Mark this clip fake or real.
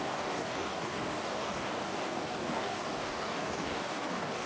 fake